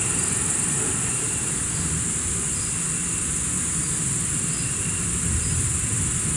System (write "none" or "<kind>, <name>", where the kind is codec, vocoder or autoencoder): none